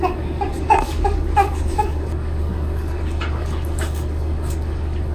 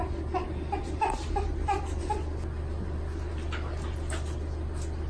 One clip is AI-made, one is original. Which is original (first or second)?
second